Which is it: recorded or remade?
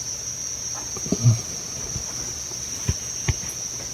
recorded